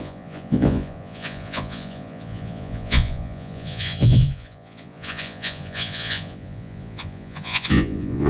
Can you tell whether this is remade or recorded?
remade